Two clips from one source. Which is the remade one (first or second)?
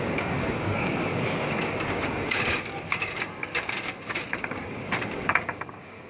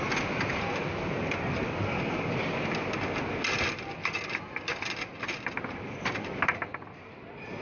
first